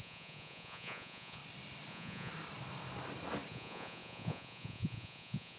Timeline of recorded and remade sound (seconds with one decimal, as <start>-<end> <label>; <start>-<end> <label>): 0.0-1.4 remade; 1.4-1.9 recorded; 1.9-2.3 remade; 2.3-3.5 recorded; 3.5-5.6 remade